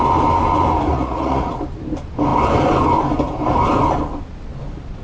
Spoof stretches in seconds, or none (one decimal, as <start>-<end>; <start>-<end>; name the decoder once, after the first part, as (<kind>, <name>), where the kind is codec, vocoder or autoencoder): 0.9-1.6 (vocoder, Vocos)